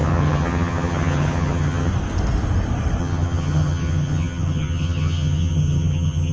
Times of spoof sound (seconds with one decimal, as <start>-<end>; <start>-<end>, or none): 0.0-1.9; 3.0-6.3